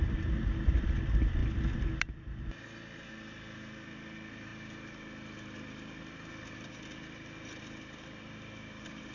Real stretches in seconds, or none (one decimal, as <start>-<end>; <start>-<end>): 0.0-9.1